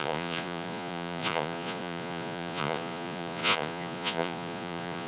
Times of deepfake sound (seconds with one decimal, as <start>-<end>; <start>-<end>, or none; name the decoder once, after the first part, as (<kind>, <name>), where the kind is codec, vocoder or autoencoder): 0.0-5.1 (vocoder, Vocos)